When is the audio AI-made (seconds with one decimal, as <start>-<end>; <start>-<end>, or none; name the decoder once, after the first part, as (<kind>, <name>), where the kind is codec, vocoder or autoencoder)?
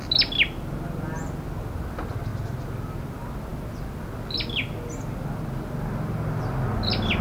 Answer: none